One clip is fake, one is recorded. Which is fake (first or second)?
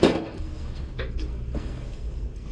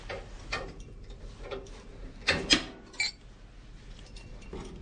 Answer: first